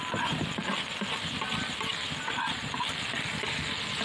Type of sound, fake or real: real